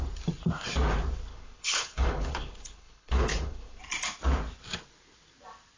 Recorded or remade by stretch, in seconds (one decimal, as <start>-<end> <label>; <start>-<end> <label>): 0.0-1.3 recorded; 1.3-3.8 remade; 3.8-5.8 recorded